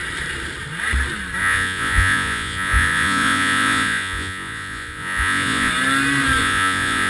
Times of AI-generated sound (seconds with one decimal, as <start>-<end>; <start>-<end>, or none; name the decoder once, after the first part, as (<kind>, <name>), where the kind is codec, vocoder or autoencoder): 1.4-5.7 (vocoder, Vocos); 6.4-7.1